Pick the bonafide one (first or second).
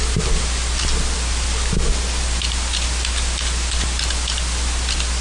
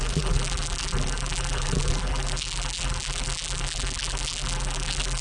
first